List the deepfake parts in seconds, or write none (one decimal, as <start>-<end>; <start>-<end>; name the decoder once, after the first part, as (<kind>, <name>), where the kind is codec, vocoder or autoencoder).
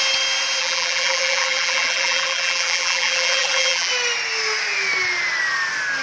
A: 0.6-3.9 (vocoder, BigVGAN v2)